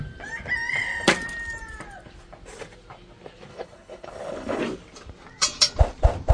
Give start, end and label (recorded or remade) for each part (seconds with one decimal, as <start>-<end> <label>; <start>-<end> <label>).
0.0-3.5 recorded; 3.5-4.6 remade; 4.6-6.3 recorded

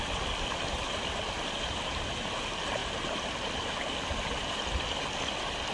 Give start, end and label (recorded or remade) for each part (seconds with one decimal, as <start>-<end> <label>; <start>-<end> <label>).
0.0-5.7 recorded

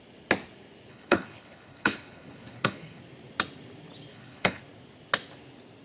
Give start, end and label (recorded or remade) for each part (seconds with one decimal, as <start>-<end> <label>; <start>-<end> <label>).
0.0-0.9 recorded; 0.9-3.0 remade; 3.0-4.1 recorded; 4.1-4.6 remade; 4.6-5.8 recorded